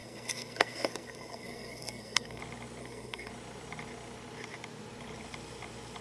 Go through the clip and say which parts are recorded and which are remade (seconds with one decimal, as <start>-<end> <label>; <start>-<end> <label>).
0.0-2.4 remade; 2.4-2.8 recorded; 2.8-3.3 remade; 3.3-6.0 recorded